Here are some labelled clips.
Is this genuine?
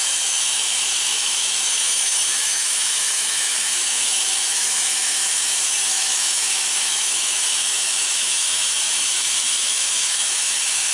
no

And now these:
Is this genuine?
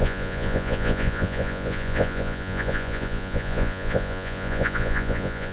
no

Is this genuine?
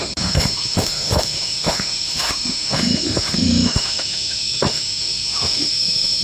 no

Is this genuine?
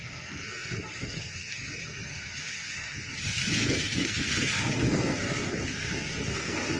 no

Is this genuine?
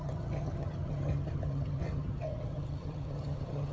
no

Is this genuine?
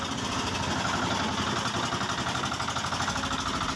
yes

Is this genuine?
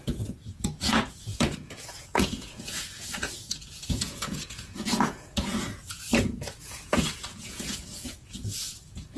no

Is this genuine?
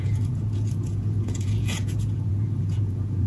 no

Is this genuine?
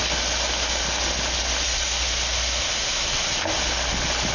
yes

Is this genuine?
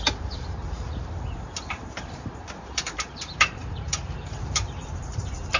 no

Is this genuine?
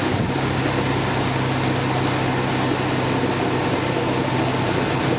yes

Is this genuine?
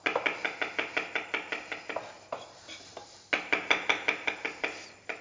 yes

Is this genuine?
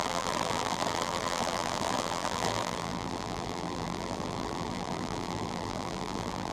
no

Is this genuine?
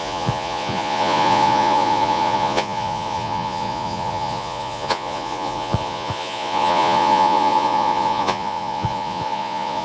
no